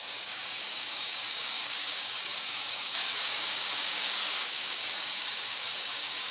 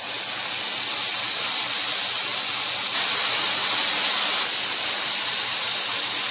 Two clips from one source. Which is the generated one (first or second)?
first